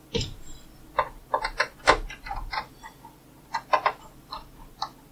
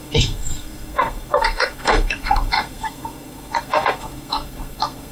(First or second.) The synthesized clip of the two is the second